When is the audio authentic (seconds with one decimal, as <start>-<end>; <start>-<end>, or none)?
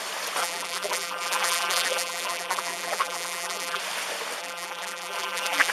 0.0-0.4; 3.8-4.4